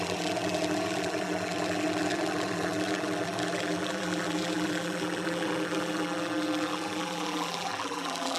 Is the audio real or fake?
fake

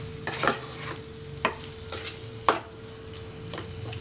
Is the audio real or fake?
real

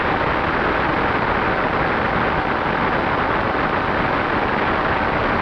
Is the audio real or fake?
real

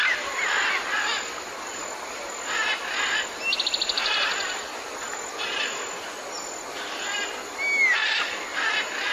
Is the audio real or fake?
real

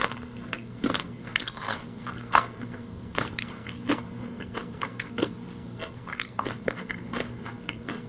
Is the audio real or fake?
fake